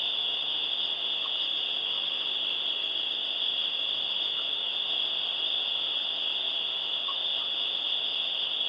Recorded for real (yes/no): no